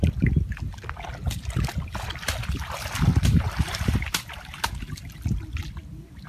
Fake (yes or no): no